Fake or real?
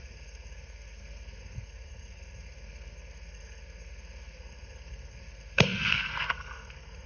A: fake